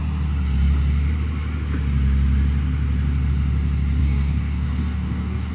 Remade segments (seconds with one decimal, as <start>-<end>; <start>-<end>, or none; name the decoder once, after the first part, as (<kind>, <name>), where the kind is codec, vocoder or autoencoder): 4.0-5.5 (codec, DAC)